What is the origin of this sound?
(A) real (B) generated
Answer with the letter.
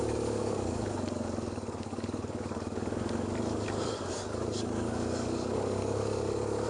B